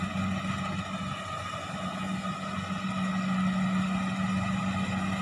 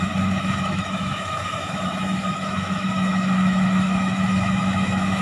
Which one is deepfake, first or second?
second